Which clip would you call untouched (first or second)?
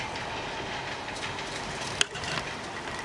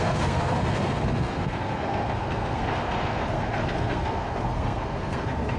first